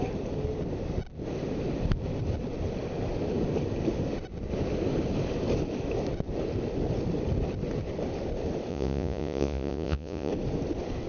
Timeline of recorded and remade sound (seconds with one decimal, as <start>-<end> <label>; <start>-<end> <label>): 0.0-8.7 recorded; 8.7-10.3 remade; 10.3-11.1 recorded